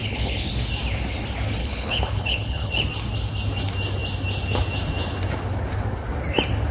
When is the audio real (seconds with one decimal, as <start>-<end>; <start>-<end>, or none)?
0.5-1.6; 2.7-6.7